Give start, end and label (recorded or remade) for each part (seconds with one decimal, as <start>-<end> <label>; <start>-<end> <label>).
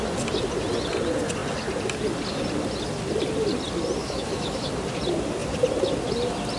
0.0-4.0 recorded; 4.0-4.7 remade; 4.7-6.6 recorded